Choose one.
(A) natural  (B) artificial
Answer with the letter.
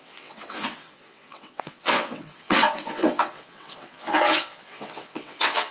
B